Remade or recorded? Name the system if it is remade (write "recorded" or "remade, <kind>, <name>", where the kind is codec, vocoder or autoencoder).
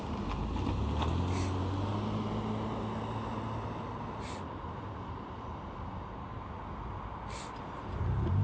recorded